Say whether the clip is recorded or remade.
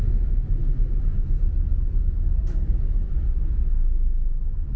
recorded